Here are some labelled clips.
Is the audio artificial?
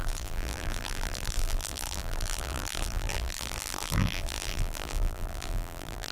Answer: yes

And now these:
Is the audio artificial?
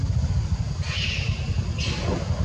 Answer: no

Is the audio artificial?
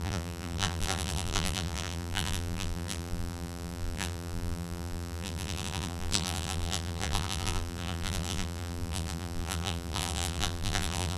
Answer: yes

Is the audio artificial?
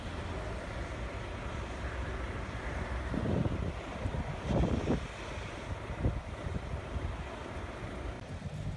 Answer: no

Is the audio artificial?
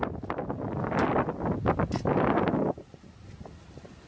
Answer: no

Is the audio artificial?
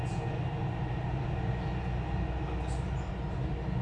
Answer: no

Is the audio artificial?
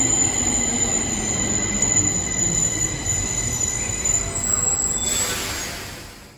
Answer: no